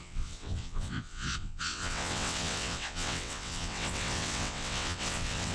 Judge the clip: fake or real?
fake